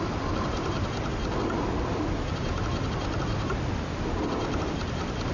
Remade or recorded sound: recorded